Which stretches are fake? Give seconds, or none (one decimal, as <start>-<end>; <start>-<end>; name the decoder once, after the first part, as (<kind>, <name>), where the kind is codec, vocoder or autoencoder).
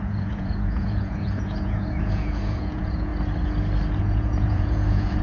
0.0-3.1 (vocoder, Vocos); 4.0-5.2